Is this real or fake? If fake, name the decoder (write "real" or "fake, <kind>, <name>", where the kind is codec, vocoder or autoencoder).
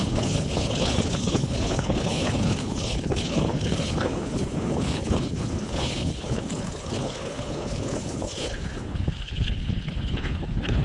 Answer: fake, codec, HILCodec